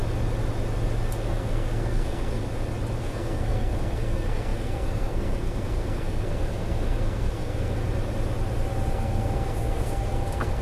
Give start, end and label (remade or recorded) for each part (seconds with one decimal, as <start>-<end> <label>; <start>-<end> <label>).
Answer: 0.0-1.2 recorded; 1.2-2.4 remade; 2.4-3.0 recorded; 3.0-7.8 remade; 7.8-8.9 recorded; 8.9-10.6 remade